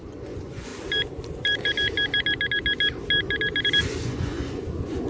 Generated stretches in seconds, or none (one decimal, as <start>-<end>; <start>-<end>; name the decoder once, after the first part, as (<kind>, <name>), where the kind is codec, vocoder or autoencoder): 0.0-0.7 (vocoder, Vocos); 3.8-5.1